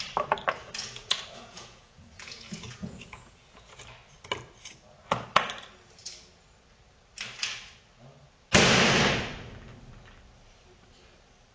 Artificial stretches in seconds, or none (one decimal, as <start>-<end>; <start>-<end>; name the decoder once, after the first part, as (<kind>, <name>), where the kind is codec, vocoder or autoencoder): 0.6-3.8 (vocoder, Vocos)